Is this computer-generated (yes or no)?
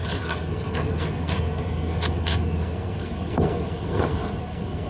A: yes